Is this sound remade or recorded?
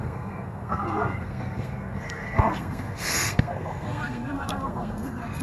remade